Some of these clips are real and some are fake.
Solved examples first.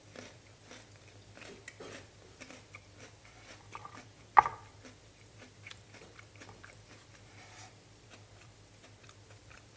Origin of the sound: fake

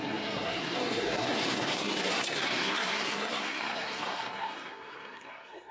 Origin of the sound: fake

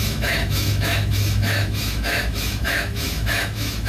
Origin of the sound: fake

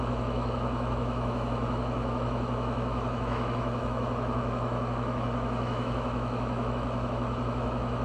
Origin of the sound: fake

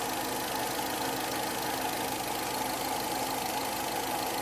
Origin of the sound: real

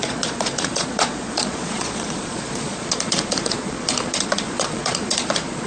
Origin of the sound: fake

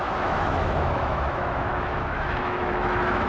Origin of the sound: fake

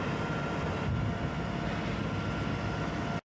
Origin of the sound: real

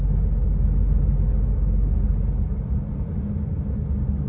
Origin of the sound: real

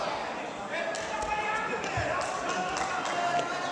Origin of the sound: real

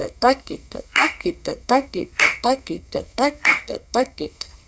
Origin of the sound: fake